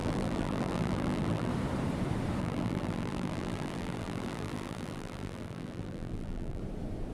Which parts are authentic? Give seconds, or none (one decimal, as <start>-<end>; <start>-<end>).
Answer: 1.5-2.4; 6.6-7.1